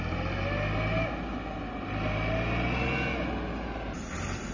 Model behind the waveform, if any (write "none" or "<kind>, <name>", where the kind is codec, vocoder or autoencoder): none